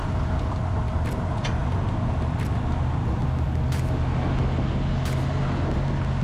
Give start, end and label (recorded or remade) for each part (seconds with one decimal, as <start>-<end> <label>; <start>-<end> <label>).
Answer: 0.0-6.2 recorded